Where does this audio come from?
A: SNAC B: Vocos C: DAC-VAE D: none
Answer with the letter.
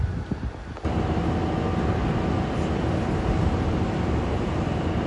D